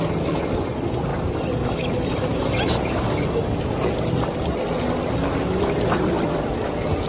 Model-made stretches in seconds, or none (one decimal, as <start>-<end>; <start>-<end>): 2.3-3.0